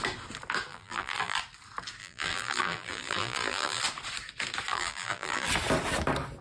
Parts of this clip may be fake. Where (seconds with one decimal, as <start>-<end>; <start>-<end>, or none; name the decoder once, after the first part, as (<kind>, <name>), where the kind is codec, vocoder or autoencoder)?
0.7-1.4 (vocoder, BigVGAN v2); 2.0-3.8; 4.7-5.5